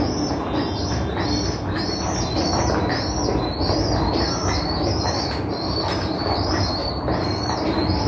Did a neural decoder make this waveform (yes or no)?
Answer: no